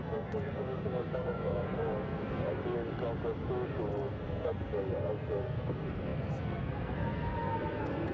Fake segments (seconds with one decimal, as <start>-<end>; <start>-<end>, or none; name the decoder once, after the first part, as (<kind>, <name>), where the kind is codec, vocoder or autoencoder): 0.0-2.6 (codec, SNAC); 3.9-8.1